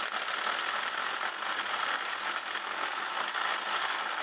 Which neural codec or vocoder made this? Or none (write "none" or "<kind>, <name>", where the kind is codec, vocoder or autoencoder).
none